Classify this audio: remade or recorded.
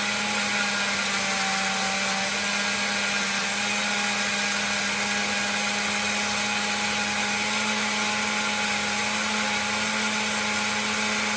recorded